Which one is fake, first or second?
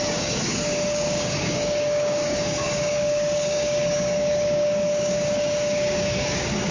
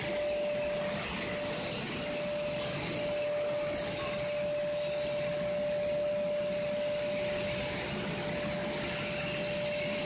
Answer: first